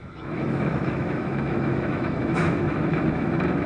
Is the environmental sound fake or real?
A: fake